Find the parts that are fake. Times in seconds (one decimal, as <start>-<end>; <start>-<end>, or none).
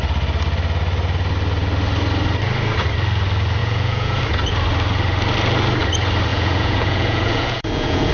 3.6-4.2; 6.3-8.1